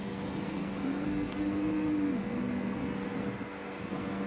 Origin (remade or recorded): remade